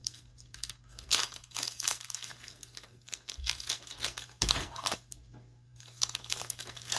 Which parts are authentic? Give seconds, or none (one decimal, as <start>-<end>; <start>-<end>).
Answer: none